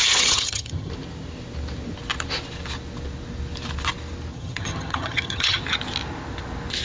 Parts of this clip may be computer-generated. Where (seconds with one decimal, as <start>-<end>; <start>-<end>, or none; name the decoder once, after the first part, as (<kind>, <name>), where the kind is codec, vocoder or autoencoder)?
0.0-0.9 (vocoder, HiFi-GAN); 4.3-5.6